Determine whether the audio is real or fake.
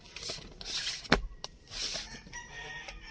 real